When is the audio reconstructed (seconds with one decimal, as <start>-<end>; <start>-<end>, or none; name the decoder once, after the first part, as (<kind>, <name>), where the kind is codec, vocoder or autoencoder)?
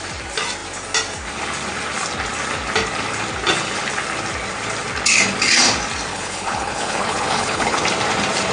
6.1-7.8 (codec, HILCodec)